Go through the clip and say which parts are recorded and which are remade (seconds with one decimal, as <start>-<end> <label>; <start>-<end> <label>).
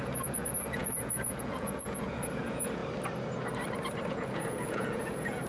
0.0-2.8 remade; 2.8-4.1 recorded; 4.1-5.5 remade